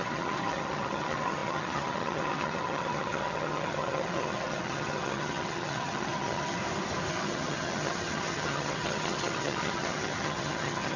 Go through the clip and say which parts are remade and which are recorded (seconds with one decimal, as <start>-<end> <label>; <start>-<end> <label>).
0.0-6.6 remade; 6.6-7.1 recorded; 7.1-11.0 remade